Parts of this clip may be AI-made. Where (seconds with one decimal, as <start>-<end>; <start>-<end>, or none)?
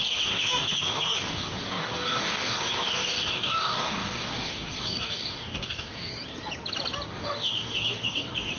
0.0-6.1; 7.1-8.6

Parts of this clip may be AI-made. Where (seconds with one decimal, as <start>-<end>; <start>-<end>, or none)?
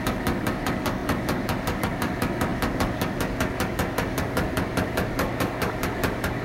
0.0-6.4